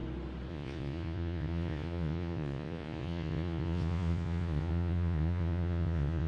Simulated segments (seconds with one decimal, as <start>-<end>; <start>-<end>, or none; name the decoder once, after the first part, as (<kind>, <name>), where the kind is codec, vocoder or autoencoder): 0.5-6.3 (vocoder, Vocos)